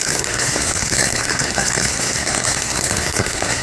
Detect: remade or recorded remade